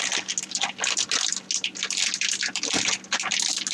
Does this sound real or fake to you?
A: real